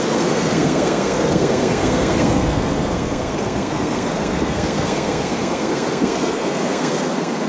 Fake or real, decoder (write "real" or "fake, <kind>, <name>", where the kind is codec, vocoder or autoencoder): fake, codec, SNAC